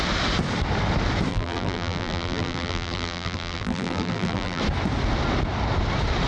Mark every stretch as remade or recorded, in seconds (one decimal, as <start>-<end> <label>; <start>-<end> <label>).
0.0-1.3 recorded; 1.3-4.6 remade; 4.6-6.3 recorded